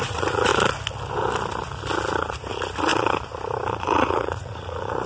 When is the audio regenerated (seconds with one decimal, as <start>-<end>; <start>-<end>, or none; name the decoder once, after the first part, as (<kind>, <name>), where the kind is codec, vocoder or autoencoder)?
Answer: 0.0-0.5 (vocoder, Vocos); 2.5-2.9; 3.8-5.1